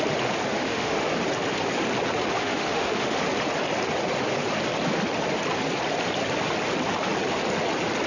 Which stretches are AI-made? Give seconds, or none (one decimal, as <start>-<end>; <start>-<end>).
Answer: 0.5-1.1; 2.4-3.2